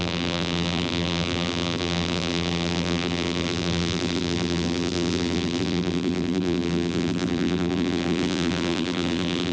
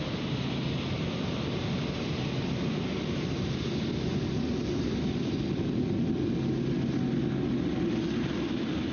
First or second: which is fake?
first